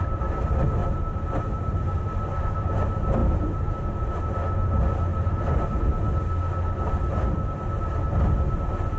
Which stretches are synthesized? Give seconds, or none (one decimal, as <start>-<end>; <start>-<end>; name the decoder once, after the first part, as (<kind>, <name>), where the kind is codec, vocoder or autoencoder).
0.8-2.0 (vocoder, BigVGAN v2); 3.2-3.7; 5.1-5.8

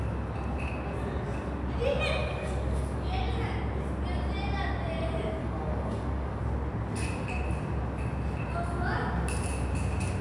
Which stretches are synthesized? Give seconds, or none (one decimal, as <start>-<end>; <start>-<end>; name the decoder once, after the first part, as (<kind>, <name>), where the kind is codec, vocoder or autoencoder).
2.2-3.2 (codec, DAC); 5.4-6.4

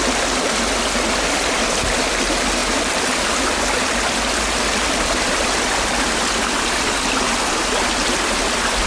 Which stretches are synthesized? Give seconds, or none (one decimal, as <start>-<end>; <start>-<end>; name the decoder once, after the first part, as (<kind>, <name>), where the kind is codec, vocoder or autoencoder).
none

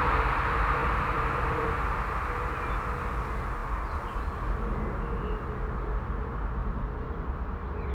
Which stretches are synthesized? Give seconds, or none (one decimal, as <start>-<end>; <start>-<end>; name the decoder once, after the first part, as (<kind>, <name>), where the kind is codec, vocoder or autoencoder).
none